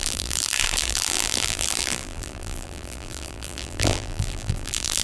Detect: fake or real fake